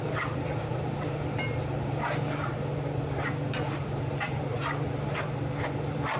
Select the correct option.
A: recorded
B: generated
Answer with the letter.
B